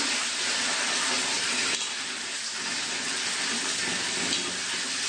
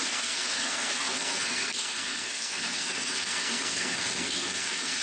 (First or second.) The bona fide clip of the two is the first